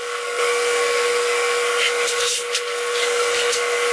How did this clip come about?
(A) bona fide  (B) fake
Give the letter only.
B